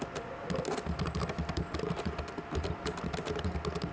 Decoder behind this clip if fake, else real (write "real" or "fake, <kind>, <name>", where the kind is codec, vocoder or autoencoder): real